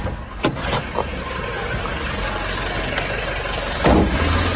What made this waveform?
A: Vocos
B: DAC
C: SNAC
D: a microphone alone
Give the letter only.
D